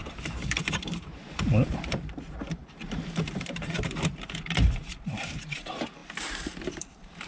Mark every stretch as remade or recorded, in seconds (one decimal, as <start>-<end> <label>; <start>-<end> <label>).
0.0-7.3 remade